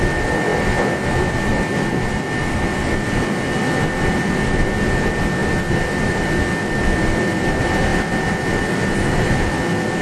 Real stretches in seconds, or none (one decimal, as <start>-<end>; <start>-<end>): 0.0-10.0